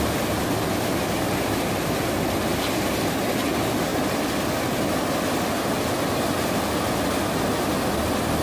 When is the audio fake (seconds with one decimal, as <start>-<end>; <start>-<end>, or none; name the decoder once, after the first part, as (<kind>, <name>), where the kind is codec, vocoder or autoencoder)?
none